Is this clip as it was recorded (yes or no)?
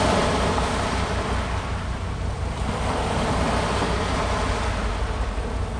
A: yes